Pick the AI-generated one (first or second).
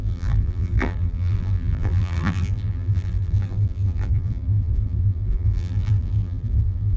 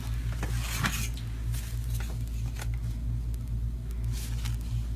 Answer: first